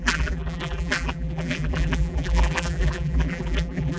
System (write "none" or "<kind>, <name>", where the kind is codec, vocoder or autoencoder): vocoder, BigVGAN v2